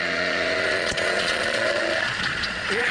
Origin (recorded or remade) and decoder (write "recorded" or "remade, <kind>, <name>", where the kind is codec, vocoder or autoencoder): remade, vocoder, Vocos